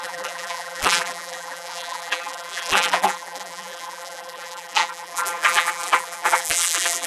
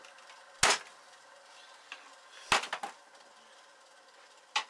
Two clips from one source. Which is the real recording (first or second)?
second